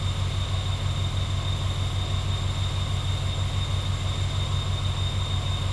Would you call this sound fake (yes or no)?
no